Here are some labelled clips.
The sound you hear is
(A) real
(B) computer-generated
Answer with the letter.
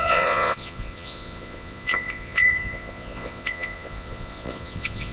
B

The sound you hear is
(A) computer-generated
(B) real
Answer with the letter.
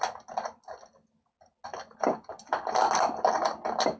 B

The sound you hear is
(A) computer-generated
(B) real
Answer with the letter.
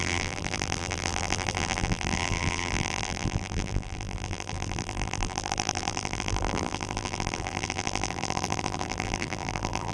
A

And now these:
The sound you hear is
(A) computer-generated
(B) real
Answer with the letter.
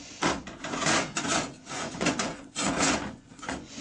A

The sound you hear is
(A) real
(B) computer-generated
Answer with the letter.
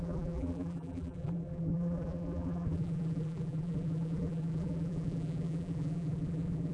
B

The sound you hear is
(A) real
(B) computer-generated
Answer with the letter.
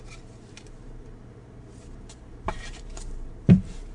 B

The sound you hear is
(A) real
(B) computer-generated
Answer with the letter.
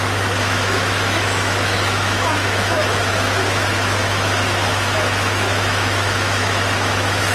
B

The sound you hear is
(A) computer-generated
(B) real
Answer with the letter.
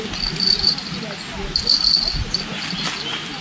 B